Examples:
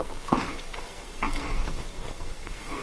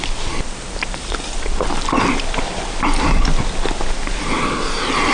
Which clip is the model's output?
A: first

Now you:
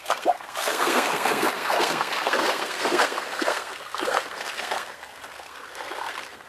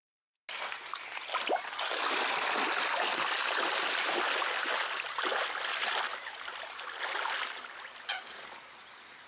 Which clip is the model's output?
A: first